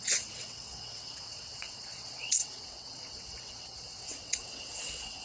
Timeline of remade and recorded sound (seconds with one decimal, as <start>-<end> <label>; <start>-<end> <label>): 0.0-5.2 remade